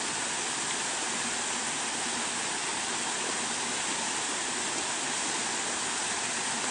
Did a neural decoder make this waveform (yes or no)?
no